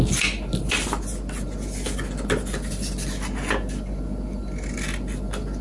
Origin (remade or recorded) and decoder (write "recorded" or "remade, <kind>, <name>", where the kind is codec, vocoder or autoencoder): recorded